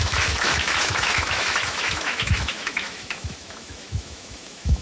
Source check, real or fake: fake